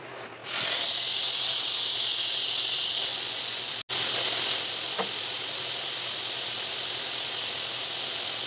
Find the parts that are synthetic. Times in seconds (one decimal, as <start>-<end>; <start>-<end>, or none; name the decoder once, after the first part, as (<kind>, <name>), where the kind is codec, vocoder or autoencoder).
3.1-3.7 (vocoder, Vocos)